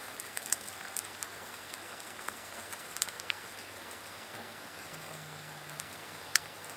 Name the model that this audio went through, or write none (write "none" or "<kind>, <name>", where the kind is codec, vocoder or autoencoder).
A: codec, SNAC